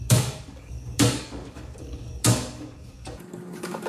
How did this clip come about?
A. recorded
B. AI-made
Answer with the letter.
B